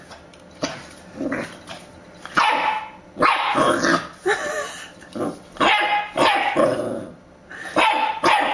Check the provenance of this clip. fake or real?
real